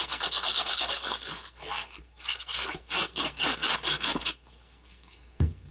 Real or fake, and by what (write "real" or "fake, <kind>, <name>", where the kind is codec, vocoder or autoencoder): fake, codec, SNAC